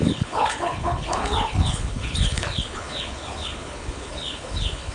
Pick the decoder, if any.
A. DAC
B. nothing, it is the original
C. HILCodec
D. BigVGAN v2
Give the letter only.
C